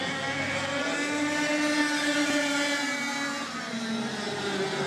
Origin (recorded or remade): recorded